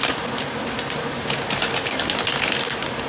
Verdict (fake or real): real